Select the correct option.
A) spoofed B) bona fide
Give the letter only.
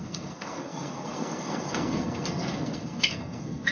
A